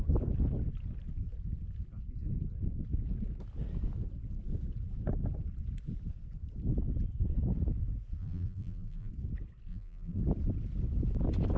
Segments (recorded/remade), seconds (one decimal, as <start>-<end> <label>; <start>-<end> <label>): 0.0-8.2 recorded; 8.2-9.1 remade; 9.1-9.7 recorded; 9.7-10.2 remade; 10.2-11.6 recorded